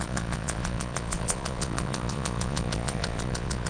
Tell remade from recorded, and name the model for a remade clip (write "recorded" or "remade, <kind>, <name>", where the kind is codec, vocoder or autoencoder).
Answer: remade, vocoder, Vocos